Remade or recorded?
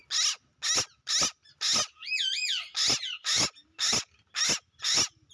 recorded